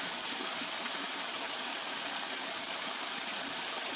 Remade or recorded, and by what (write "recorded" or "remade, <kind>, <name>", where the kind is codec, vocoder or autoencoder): recorded